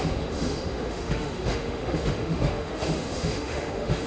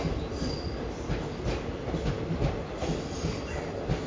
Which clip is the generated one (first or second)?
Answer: first